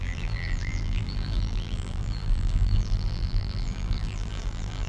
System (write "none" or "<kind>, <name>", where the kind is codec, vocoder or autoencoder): vocoder, BigVGAN v2